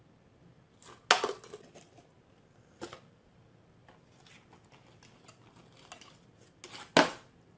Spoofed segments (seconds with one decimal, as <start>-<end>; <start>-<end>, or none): none